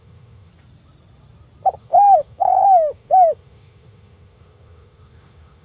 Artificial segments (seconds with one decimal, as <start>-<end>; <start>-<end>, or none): 0.0-0.5; 1.8-5.6